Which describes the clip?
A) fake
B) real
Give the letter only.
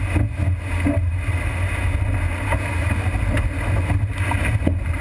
B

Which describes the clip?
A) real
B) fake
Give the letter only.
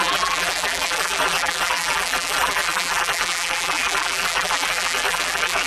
B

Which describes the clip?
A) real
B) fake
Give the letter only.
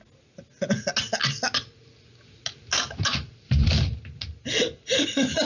A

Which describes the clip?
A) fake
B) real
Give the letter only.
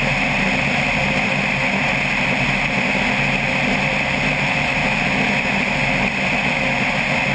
B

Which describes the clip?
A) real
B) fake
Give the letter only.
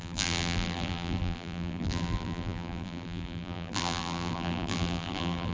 B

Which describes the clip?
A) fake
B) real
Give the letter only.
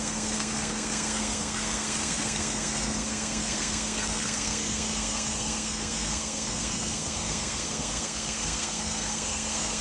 A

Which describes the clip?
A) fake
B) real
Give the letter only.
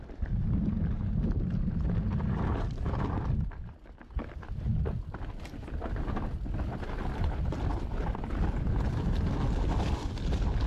B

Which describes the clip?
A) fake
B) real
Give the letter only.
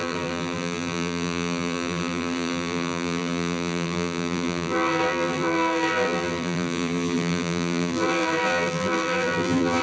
A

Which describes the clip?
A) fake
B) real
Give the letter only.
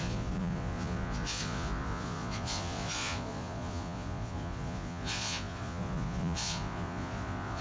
A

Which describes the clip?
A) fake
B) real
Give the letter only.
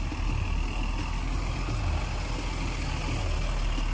B